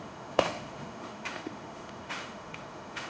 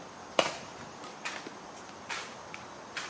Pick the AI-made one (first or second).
first